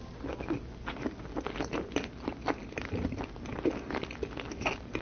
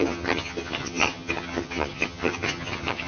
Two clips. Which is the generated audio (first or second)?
second